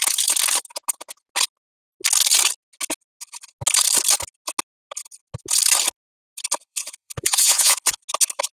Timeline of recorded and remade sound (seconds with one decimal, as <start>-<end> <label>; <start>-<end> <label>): 0.0-6.6 recorded; 6.6-8.0 remade; 8.0-8.6 recorded